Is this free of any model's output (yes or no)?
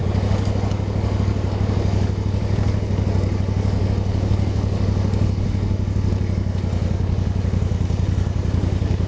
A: no